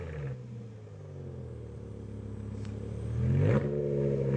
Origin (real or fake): real